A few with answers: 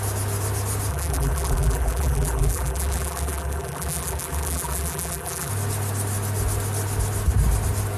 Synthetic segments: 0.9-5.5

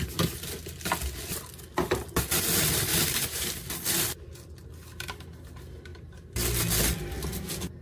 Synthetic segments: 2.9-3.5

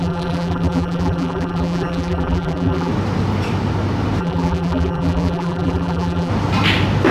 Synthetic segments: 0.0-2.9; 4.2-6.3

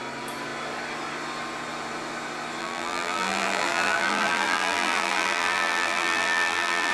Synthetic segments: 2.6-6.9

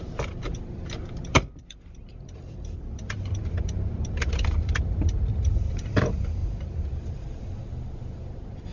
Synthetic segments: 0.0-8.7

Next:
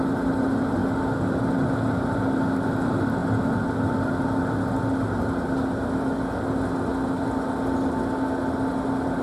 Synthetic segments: none